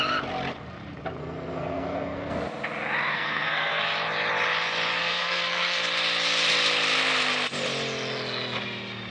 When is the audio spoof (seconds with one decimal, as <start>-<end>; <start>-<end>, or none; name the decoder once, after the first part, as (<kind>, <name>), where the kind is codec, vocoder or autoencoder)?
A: 1.2-2.4 (codec, SNAC); 3.1-3.8; 5.0-5.8